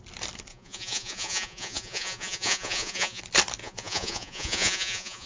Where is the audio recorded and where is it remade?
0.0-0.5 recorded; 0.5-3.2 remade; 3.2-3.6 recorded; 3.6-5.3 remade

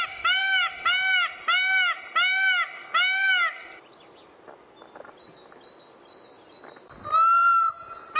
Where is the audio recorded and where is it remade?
0.0-8.2 recorded

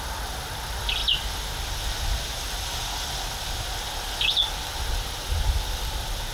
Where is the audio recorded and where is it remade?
0.0-6.3 recorded